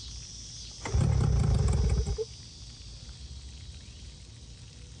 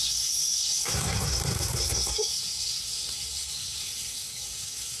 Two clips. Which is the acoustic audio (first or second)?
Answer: first